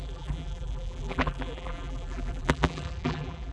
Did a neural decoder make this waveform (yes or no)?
yes